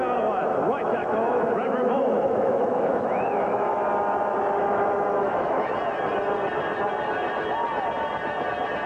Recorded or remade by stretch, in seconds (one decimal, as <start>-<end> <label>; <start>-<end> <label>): 0.0-0.4 recorded; 0.4-3.8 remade; 3.8-4.6 recorded; 4.6-5.7 remade; 5.7-8.9 recorded